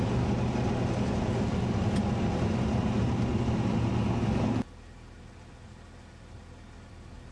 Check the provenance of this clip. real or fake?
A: real